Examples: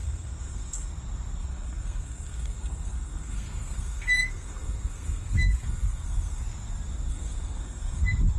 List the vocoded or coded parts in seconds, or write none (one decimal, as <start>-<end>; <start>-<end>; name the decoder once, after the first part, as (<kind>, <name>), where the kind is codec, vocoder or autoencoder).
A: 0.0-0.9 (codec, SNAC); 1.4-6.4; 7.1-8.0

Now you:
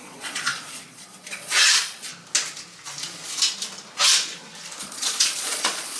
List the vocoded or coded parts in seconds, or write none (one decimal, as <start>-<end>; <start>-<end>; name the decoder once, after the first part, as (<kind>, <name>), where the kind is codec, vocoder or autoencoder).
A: 0.0-2.1 (vocoder, Vocos); 4.8-6.0

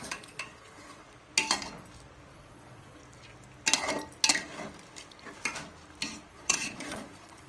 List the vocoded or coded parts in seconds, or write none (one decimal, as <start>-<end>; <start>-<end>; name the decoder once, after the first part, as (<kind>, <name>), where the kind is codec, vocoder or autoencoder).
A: 0.0-1.0 (vocoder, Vocos); 2.3-3.0; 6.3-7.5